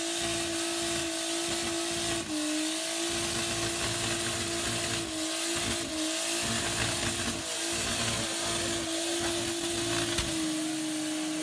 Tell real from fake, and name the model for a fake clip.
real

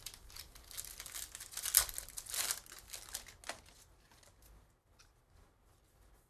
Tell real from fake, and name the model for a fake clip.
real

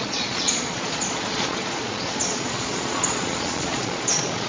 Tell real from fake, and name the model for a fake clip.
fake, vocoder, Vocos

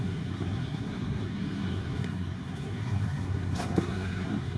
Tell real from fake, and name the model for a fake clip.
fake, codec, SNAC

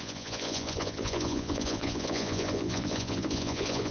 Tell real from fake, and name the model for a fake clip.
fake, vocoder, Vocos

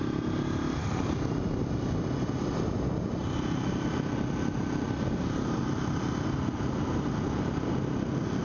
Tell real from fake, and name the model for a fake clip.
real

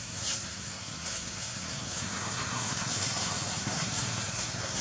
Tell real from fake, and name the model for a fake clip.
fake, codec, SNAC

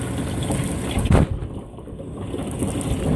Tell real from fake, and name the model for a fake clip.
real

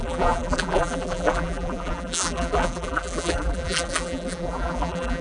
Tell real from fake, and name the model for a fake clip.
fake, vocoder, BigVGAN v2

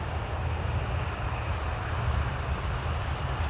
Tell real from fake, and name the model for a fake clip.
real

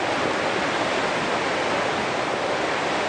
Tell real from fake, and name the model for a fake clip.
real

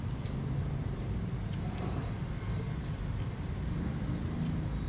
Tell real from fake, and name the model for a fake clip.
real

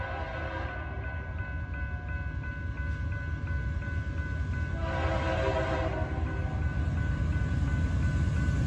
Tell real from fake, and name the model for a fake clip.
real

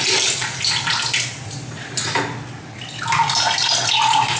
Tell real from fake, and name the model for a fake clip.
real